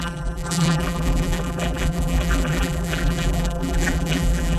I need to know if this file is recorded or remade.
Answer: remade